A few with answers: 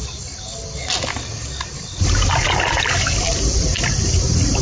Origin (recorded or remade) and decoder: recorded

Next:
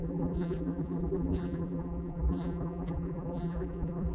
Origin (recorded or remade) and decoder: remade, vocoder, BigVGAN v2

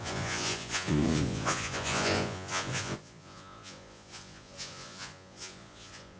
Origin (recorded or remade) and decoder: remade, vocoder, Vocos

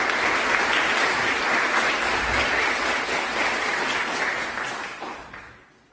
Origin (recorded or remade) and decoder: recorded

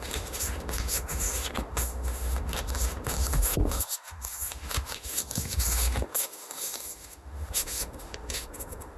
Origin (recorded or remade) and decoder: remade, autoencoder, DAC-VAE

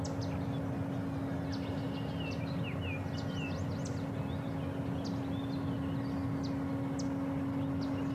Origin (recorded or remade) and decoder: recorded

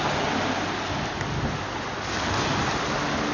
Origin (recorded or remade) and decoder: recorded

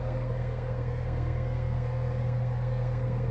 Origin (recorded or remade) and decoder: remade, codec, SNAC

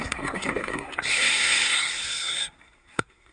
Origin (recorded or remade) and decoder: remade, codec, SNAC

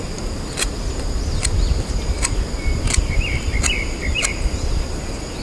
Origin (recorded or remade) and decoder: recorded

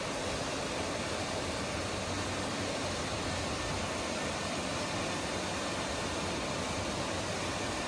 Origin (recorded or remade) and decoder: recorded